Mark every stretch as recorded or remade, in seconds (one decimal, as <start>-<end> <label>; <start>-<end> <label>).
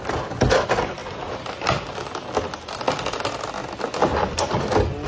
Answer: 0.0-5.1 recorded